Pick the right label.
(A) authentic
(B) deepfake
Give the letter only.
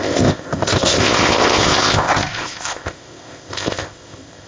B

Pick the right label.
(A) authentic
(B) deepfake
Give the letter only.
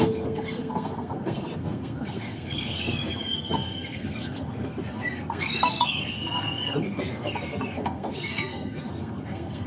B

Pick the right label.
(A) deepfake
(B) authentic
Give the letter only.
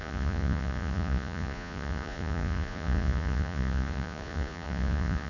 A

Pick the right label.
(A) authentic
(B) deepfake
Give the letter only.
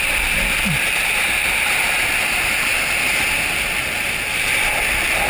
B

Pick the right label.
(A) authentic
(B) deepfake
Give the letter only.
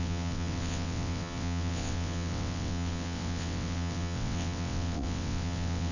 B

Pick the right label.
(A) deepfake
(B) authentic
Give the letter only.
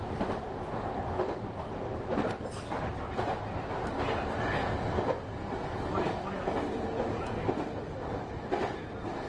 B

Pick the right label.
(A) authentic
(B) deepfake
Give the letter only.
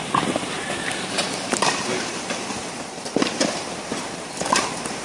B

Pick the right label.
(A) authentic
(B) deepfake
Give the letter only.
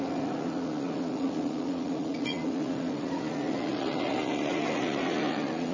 B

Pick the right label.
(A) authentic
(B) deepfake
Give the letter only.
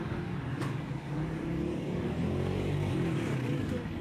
B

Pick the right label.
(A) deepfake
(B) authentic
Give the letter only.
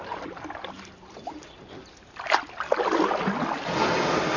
B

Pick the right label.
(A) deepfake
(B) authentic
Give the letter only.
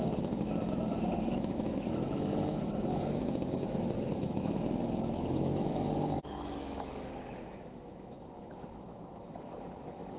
A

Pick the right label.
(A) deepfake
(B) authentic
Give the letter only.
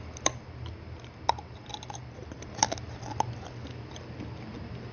B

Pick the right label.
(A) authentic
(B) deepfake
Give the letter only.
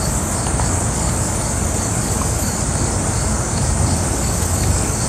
B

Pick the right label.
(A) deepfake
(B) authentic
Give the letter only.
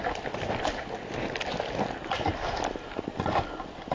B